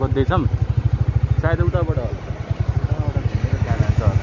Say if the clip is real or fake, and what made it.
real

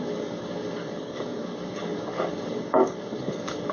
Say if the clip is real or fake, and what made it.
fake, codec, DAC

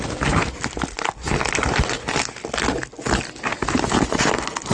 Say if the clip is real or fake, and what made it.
real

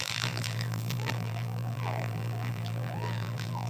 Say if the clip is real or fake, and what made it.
fake, vocoder, BigVGAN v2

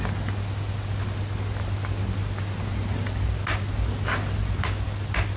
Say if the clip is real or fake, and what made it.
real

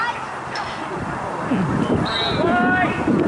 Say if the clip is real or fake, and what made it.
real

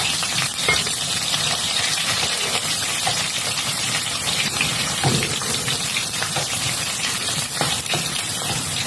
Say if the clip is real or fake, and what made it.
fake, vocoder, BigVGAN v2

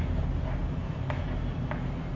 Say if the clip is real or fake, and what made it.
real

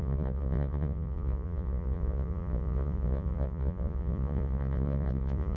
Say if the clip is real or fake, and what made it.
fake, vocoder, Vocos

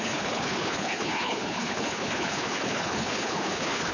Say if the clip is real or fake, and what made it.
fake, codec, HILCodec